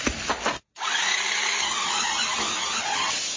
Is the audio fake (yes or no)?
no